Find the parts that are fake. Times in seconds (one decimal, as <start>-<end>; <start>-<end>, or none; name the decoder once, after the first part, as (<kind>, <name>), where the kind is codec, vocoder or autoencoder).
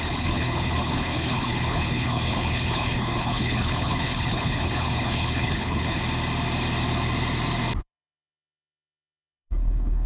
0.0-6.0 (codec, HILCodec); 7.8-10.1